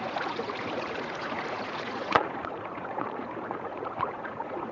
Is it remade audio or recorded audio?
remade